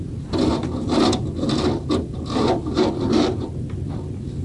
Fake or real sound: real